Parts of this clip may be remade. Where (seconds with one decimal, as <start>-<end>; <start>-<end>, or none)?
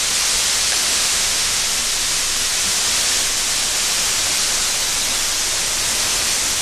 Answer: 0.9-1.6